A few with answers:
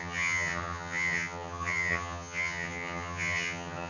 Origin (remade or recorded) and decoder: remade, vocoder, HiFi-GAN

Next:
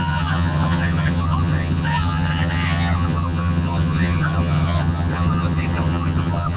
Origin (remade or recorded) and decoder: remade, vocoder, HiFi-GAN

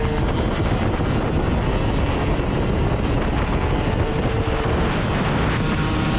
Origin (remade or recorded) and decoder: recorded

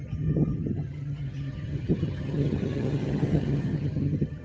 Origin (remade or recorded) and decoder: remade, vocoder, HiFi-GAN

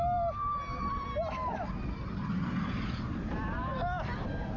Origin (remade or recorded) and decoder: recorded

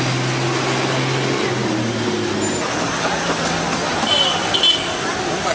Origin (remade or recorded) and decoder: recorded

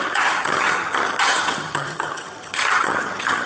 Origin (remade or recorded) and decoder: remade, vocoder, HiFi-GAN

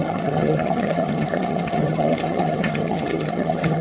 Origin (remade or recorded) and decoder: remade, vocoder, HiFi-GAN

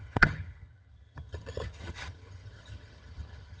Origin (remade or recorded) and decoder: remade, vocoder, HiFi-GAN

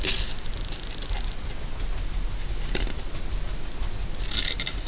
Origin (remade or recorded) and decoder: recorded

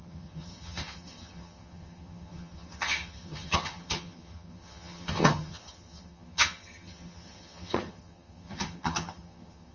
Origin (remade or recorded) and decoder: remade, vocoder, HiFi-GAN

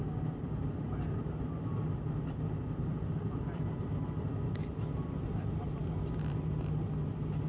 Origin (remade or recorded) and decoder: recorded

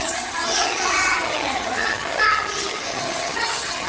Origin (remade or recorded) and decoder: remade, vocoder, HiFi-GAN